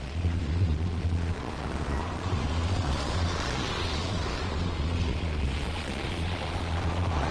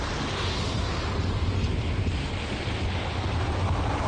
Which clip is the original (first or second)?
second